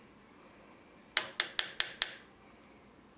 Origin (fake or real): real